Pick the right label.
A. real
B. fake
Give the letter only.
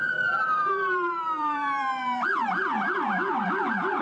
B